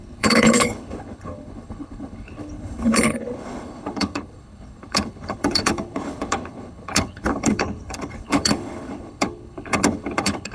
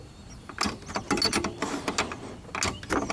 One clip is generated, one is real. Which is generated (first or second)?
first